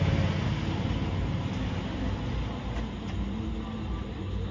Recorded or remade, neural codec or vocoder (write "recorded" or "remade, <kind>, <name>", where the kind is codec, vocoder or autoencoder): recorded